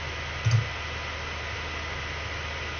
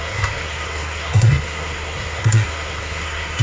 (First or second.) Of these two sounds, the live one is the first